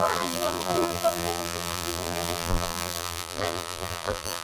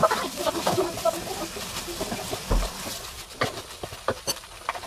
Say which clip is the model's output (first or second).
first